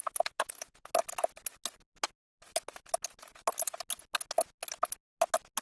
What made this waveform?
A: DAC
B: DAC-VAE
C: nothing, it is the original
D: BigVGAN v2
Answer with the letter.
C